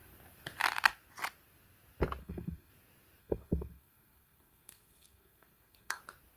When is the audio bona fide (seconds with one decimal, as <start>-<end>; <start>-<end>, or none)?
0.0-2.2; 2.7-3.2; 6.0-6.4